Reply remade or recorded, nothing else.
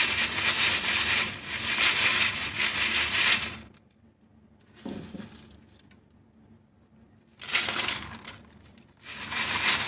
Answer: recorded